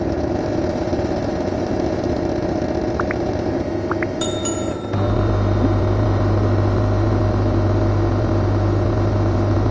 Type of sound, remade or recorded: recorded